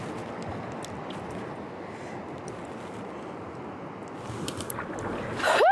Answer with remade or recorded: recorded